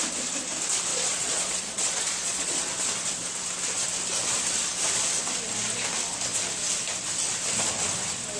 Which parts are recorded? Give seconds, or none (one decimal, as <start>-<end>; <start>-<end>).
0.0-0.9; 2.6-8.4